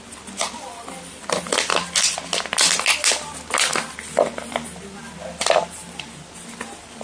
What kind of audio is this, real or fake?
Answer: real